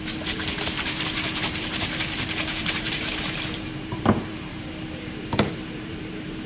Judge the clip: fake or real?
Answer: fake